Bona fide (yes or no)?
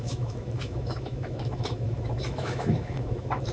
no